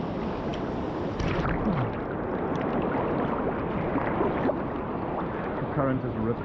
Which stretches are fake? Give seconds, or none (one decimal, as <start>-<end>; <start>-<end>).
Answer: none